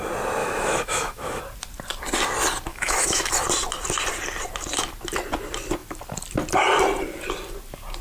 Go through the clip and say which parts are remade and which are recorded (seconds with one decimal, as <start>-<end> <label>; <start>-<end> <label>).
0.0-0.4 recorded; 0.4-1.4 remade; 1.4-2.7 recorded; 2.7-3.3 remade; 3.3-8.0 recorded